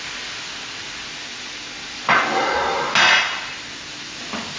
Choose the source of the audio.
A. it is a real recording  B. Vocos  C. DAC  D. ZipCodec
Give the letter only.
A